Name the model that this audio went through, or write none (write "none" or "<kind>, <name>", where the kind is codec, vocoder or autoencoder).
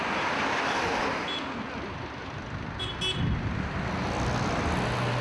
none